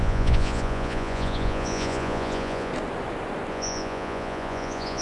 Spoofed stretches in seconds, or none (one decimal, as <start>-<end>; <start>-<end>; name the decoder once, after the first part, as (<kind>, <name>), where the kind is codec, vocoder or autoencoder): 0.0-2.7 (vocoder, Vocos); 3.5-5.0